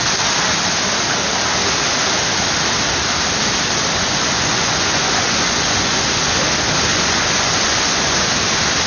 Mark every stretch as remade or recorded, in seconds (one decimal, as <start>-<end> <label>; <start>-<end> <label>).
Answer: 0.0-4.0 recorded; 4.0-6.4 remade; 6.4-6.9 recorded; 6.9-8.3 remade; 8.3-8.9 recorded